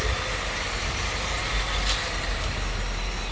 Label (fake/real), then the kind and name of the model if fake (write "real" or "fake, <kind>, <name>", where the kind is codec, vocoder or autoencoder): real